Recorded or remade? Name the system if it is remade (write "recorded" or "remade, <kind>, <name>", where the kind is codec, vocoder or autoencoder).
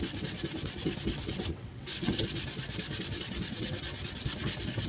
remade, vocoder, WaveNeXt